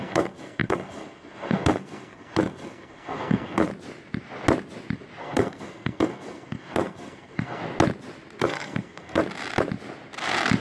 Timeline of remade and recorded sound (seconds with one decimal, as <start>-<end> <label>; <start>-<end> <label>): 0.0-3.7 remade; 3.7-5.2 recorded; 5.2-7.6 remade; 7.6-8.4 recorded; 8.4-9.2 remade; 9.2-10.6 recorded